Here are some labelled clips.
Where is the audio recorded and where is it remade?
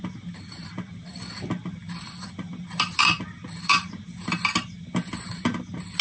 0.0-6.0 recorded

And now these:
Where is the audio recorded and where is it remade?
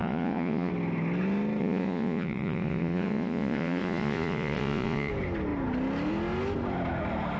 0.0-0.7 remade; 0.7-1.6 recorded; 1.6-5.1 remade; 5.1-7.4 recorded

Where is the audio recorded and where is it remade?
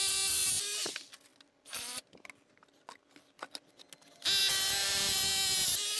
0.0-6.0 recorded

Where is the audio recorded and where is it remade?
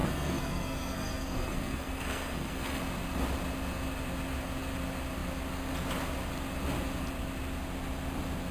0.0-2.8 remade; 2.8-8.5 recorded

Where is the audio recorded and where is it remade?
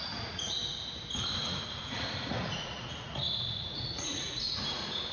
0.0-0.6 remade; 0.6-1.4 recorded; 1.4-5.1 remade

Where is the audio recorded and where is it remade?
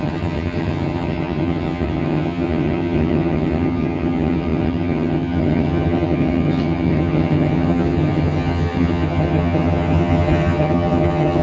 0.0-11.4 remade